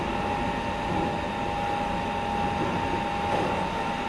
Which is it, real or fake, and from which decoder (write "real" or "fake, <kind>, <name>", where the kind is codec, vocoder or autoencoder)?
real